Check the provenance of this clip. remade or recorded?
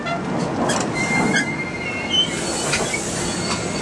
recorded